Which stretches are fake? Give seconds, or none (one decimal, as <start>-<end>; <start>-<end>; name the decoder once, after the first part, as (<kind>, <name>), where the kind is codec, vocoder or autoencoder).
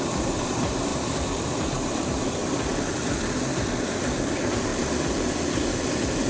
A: 0.0-2.4 (vocoder, BigVGAN v2); 3.8-4.7